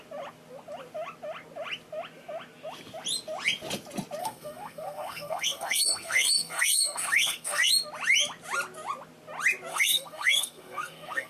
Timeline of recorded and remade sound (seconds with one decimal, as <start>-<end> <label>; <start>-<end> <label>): 0.0-4.2 recorded; 4.2-7.7 remade; 7.7-9.7 recorded; 9.7-11.3 remade